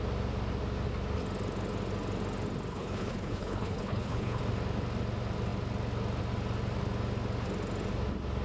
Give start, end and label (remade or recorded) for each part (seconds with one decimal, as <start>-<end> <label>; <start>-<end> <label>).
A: 0.0-2.7 recorded; 2.7-4.4 remade; 4.4-8.4 recorded